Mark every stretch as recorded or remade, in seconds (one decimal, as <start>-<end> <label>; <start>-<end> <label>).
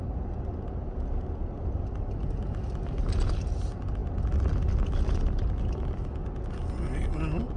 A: 0.0-7.6 recorded